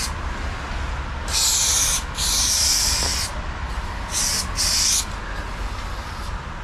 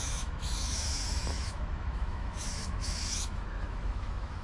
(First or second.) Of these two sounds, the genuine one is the first